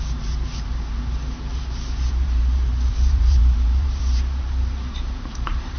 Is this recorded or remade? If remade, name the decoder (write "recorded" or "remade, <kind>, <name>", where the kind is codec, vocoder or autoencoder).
remade, vocoder, BigVGAN v2